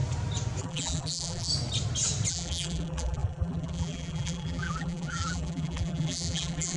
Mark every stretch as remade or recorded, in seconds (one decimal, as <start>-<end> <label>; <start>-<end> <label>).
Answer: 0.0-0.6 recorded; 0.6-1.5 remade; 1.5-2.3 recorded; 2.3-6.8 remade